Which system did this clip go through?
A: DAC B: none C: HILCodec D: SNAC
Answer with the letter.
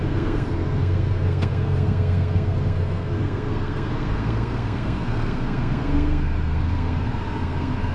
D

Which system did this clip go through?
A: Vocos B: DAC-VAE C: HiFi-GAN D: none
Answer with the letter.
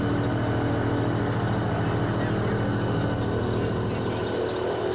D